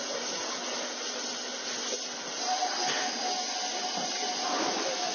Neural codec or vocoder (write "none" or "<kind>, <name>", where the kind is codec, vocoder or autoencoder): none